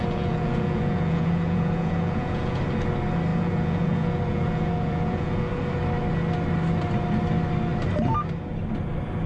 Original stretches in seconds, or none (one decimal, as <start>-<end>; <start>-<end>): 2.6-3.3; 5.5-9.3